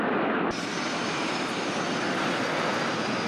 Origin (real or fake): real